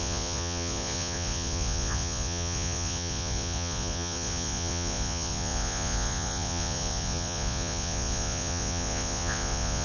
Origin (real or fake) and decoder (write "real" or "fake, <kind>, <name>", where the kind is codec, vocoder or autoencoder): fake, vocoder, Vocos